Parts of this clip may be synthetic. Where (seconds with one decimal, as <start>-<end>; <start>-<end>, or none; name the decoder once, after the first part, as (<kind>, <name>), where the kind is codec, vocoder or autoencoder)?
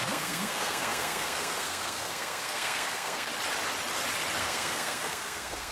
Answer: 0.0-3.3 (codec, SNAC); 4.4-5.7